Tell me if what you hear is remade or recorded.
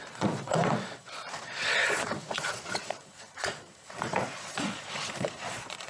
remade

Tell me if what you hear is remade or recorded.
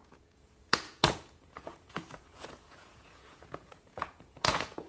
remade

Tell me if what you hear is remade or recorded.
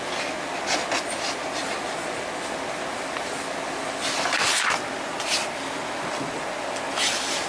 recorded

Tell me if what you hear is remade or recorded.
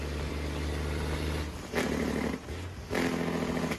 recorded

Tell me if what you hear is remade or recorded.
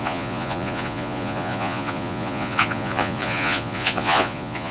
remade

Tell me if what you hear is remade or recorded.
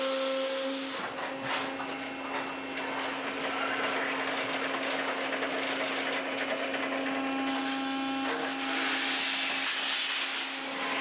recorded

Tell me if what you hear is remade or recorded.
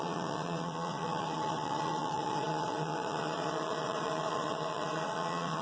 remade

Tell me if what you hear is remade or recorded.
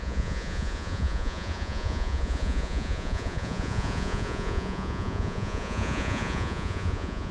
remade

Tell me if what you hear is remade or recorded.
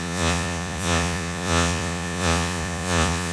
remade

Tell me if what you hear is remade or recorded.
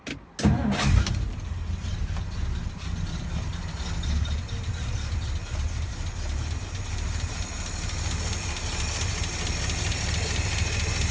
recorded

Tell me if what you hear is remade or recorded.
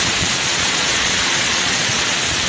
remade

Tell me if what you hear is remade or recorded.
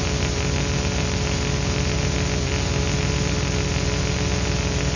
recorded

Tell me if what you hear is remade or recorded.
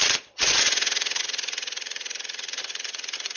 remade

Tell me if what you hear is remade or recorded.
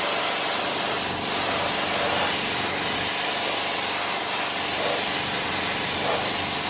recorded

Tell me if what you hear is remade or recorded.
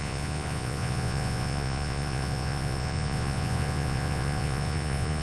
remade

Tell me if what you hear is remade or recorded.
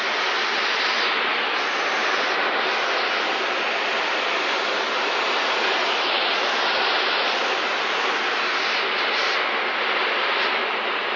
recorded